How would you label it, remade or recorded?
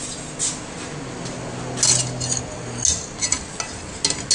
recorded